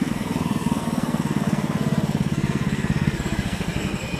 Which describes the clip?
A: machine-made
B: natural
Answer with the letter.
A